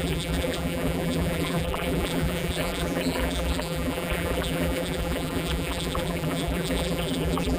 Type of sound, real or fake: fake